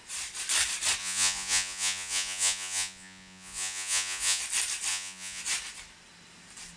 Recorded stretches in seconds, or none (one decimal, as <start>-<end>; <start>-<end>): 0.0-1.0; 4.4-4.9; 5.4-6.8